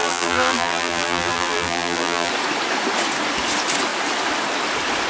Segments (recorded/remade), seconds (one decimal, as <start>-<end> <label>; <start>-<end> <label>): 0.0-2.3 remade; 2.3-5.1 recorded